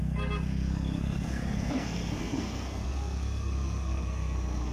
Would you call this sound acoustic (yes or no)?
no